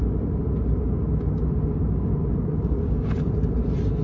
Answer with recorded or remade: recorded